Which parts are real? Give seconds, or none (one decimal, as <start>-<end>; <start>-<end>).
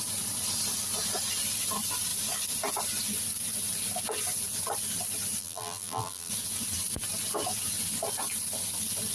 0.0-5.4; 6.3-9.1